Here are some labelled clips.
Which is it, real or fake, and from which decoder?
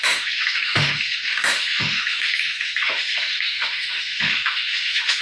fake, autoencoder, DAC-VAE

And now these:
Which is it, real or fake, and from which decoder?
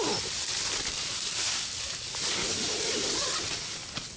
real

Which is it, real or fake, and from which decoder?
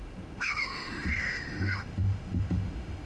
fake, autoencoder, DAC-VAE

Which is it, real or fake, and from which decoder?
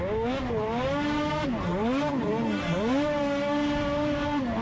real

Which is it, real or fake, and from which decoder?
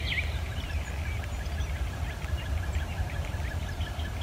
real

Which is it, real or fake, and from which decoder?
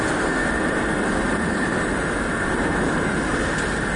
real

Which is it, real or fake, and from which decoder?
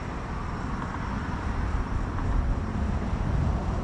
real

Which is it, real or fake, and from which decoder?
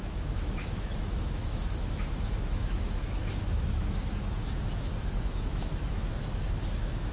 fake, autoencoder, DAC-VAE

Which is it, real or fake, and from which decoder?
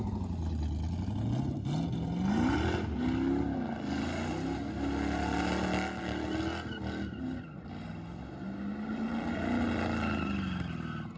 real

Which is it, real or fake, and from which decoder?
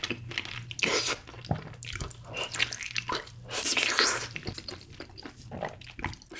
real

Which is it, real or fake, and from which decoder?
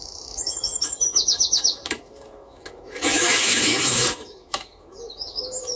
fake, autoencoder, DAC-VAE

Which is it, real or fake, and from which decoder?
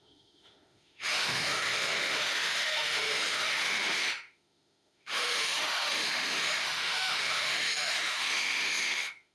fake, autoencoder, DAC-VAE